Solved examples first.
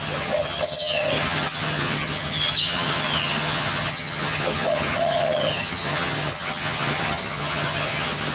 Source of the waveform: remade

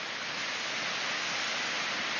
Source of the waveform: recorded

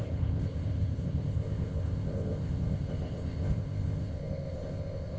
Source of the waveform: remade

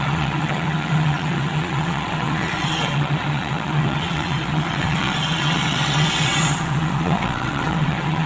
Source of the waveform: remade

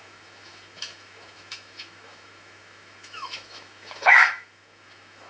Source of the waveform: remade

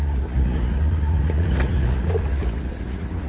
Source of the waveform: remade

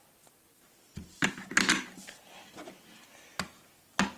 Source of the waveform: recorded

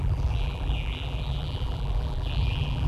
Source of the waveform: remade